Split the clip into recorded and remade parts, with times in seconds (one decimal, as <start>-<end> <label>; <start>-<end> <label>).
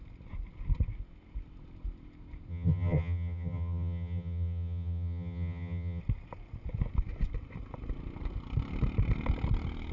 0.0-2.5 recorded; 2.5-6.0 remade; 6.0-9.9 recorded